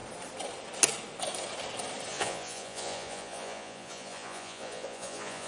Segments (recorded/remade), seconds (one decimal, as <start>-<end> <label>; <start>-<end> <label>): 0.0-2.1 recorded; 2.1-5.5 remade

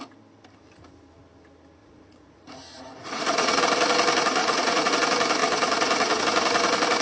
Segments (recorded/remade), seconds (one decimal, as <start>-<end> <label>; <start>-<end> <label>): 0.0-1.8 recorded; 1.8-3.6 remade; 3.6-4.4 recorded; 4.4-4.9 remade; 4.9-7.0 recorded